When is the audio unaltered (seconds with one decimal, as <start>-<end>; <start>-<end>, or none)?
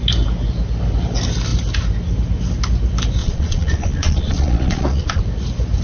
0.0-3.2; 5.2-5.8